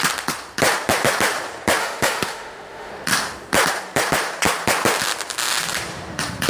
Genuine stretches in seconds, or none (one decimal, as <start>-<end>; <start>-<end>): 0.0-1.8; 2.9-6.5